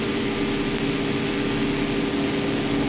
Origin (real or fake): real